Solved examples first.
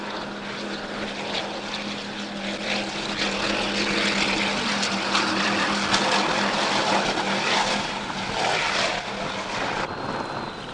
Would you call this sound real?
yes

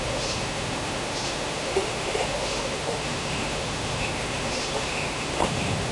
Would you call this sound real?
no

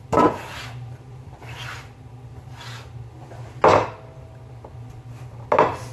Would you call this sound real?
yes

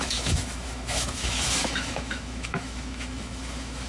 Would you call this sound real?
no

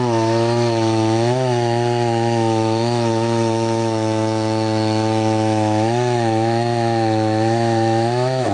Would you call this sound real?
no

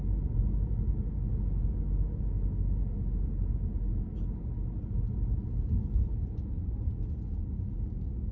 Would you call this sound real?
yes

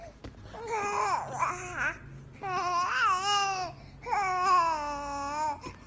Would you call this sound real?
yes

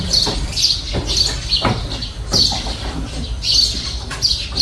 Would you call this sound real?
yes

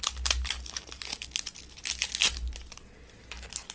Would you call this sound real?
yes